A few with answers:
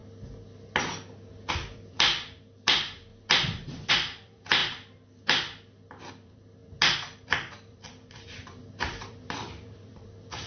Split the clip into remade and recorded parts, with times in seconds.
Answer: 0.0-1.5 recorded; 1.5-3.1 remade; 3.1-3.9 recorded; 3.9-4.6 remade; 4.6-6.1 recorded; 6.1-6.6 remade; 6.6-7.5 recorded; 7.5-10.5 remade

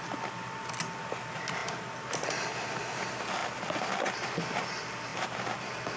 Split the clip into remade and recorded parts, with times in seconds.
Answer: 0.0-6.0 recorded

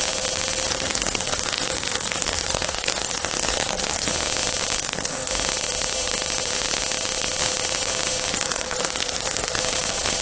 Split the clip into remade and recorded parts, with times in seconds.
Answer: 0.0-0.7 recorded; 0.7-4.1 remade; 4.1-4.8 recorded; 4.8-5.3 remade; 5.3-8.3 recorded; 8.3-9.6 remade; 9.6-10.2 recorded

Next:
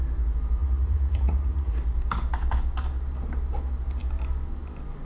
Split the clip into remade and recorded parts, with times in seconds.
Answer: 0.0-0.6 recorded; 0.6-1.7 remade; 1.7-5.0 recorded

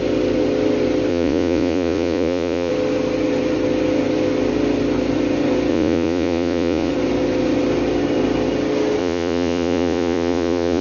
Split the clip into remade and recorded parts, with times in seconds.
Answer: 0.0-1.1 recorded; 1.1-2.7 remade; 2.7-5.7 recorded; 5.7-6.9 remade; 6.9-9.0 recorded; 9.0-10.8 remade

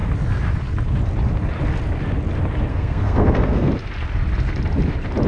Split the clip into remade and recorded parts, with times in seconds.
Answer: 0.0-2.7 recorded; 2.7-3.7 remade; 3.7-5.3 recorded

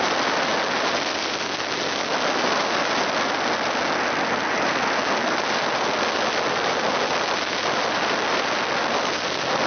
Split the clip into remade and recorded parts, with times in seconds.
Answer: 0.0-9.7 recorded